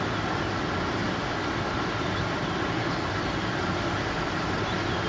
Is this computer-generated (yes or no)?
no